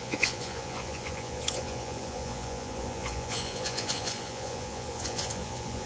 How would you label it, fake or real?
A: fake